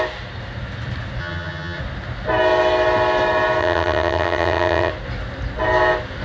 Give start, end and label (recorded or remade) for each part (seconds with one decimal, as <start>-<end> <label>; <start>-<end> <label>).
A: 0.0-1.2 recorded; 1.2-1.8 remade; 1.8-3.6 recorded; 3.6-4.9 remade; 4.9-6.2 recorded

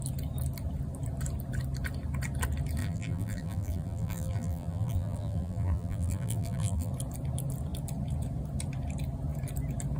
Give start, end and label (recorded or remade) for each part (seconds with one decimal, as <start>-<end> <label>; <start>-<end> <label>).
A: 0.0-2.8 recorded; 2.8-6.9 remade; 6.9-10.0 recorded

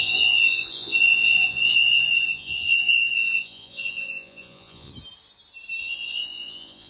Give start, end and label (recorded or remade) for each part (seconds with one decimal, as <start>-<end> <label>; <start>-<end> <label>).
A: 0.0-4.9 remade; 4.9-5.8 recorded; 5.8-6.9 remade

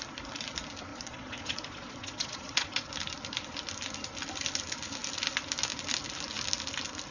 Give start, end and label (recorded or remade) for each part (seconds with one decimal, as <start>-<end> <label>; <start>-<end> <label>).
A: 0.0-0.9 recorded; 0.9-2.9 remade; 2.9-7.1 recorded

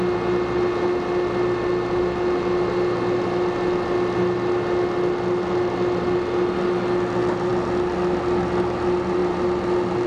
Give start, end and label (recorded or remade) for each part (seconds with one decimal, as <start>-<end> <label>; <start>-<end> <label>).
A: 0.0-10.1 recorded

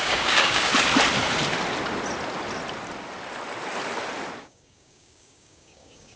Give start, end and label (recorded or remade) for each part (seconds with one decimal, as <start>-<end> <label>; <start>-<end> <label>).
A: 0.0-0.7 remade; 0.7-4.4 recorded; 4.4-6.2 remade